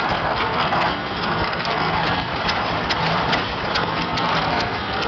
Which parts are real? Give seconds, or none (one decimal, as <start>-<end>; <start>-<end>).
2.3-3.8